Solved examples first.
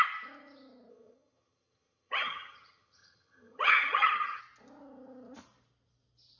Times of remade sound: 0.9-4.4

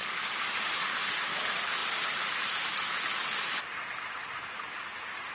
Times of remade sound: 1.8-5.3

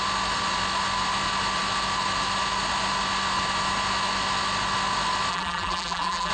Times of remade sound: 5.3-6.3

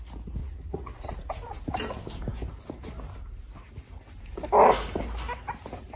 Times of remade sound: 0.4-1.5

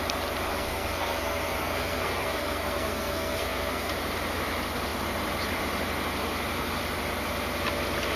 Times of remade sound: 0.5-3.9

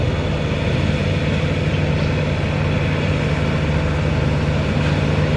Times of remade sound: none

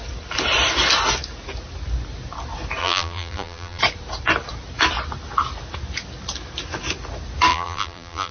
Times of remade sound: 2.8-3.8; 7.5-8.3

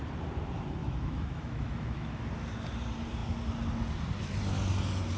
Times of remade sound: 0.8-2.3